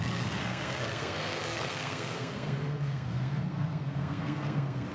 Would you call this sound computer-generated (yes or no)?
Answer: yes